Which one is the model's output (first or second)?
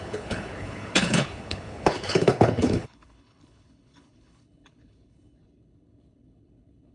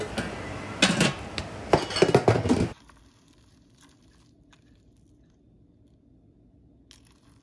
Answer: first